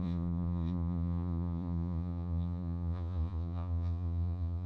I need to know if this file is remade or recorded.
remade